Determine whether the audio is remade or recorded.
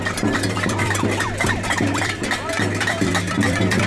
remade